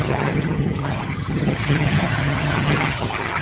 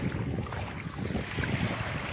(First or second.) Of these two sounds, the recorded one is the second